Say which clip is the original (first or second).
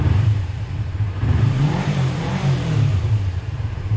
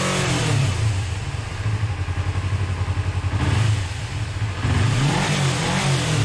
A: second